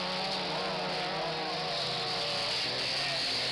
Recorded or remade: recorded